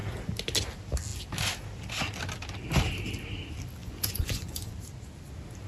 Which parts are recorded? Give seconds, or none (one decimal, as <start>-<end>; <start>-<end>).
0.0-3.8; 4.7-5.7